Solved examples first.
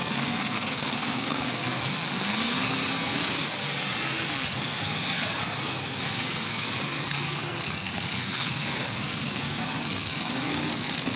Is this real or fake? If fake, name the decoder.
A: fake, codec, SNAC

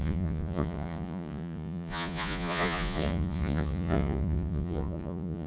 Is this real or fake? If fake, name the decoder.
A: fake, vocoder, Vocos